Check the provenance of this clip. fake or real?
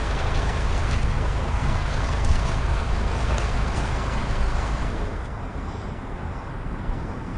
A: fake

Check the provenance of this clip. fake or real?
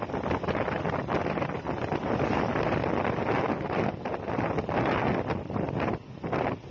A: real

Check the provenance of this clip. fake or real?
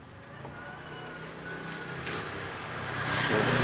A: real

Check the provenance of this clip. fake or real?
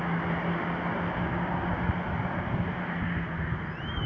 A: real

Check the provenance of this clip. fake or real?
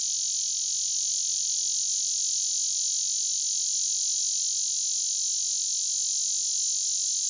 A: real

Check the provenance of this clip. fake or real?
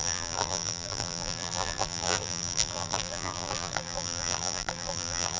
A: fake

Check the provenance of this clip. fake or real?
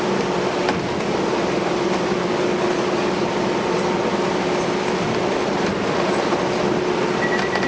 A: real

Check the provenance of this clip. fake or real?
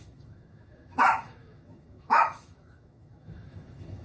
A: fake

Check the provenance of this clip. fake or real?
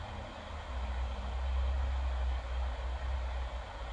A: real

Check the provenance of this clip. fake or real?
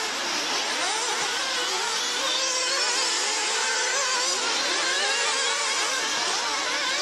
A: real